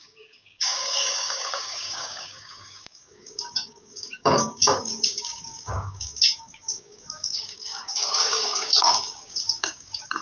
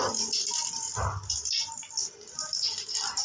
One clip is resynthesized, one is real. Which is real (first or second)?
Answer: second